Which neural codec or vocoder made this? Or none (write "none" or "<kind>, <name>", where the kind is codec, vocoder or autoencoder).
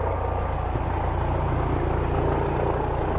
none